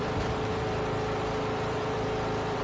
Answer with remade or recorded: remade